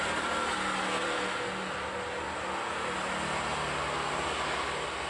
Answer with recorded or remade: recorded